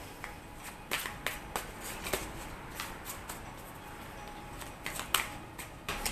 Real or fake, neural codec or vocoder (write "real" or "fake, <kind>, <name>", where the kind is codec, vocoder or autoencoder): real